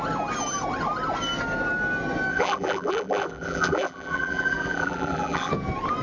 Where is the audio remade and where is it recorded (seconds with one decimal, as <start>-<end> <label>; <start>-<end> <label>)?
0.0-2.3 recorded; 2.3-5.5 remade; 5.5-6.0 recorded

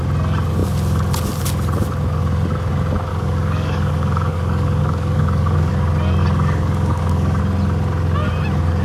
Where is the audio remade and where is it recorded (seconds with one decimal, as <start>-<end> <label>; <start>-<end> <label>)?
0.0-3.1 recorded; 3.1-5.7 remade; 5.7-6.2 recorded; 6.2-7.4 remade; 7.4-8.8 recorded

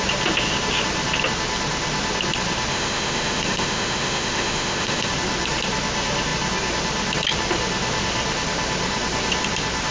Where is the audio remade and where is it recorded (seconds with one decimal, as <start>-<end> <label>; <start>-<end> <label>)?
0.0-2.7 recorded; 2.7-5.1 remade; 5.1-9.9 recorded